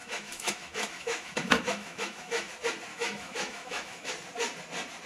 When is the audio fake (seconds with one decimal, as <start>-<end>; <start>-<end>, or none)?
0.0-2.5; 2.9-4.1